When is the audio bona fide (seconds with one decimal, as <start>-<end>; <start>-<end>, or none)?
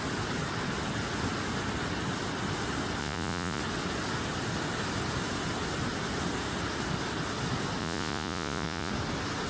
0.0-3.0; 3.6-7.8; 8.9-9.5